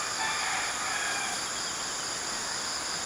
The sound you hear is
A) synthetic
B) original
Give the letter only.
B